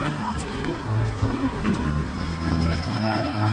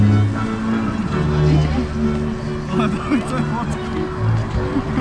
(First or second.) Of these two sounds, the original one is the second